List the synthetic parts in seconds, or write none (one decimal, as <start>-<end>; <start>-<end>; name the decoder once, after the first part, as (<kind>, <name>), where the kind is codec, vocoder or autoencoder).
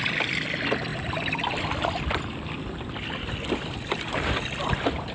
0.9-3.7 (vocoder, BigVGAN v2)